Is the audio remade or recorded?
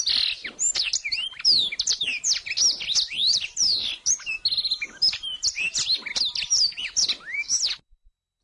remade